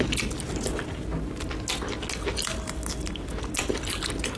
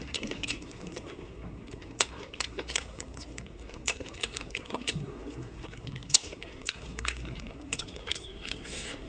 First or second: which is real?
first